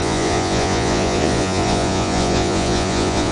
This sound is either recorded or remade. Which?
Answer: remade